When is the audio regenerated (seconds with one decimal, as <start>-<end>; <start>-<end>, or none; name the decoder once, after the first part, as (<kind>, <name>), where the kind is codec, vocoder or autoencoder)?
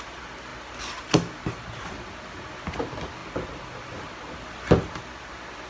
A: none